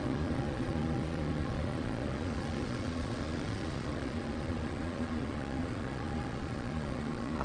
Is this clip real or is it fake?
fake